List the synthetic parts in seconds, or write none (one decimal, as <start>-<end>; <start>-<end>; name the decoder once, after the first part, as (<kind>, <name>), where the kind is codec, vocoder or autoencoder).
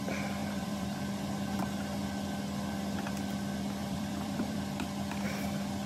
0.4-1.0 (vocoder, BigVGAN v2); 3.8-4.6